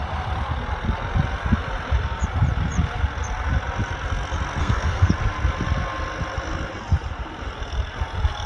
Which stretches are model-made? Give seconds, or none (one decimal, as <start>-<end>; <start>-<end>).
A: 4.6-5.1